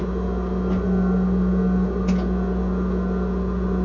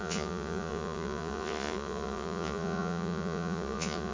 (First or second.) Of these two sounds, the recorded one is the first